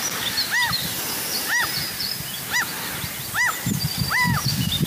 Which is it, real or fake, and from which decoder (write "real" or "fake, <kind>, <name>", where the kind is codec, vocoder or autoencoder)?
real